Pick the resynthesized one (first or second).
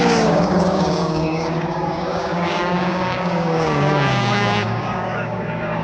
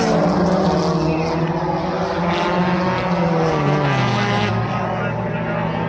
first